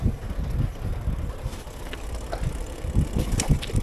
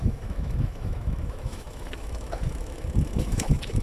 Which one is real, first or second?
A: first